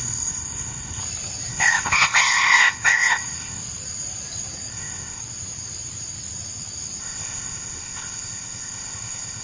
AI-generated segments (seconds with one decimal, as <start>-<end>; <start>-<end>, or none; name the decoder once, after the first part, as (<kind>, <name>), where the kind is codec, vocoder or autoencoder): 0.0-1.0 (codec, ZipCodec); 1.5-3.6; 4.7-5.2; 7.0-9.4